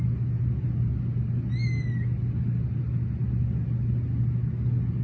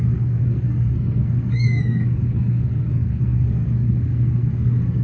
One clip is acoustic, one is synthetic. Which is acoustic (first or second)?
first